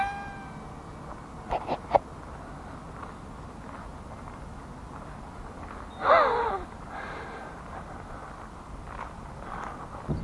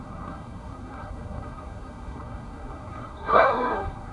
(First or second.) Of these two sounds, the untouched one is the first